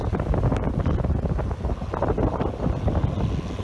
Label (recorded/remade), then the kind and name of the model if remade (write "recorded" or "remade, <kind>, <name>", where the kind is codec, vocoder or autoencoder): recorded